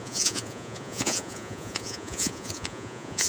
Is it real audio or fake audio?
fake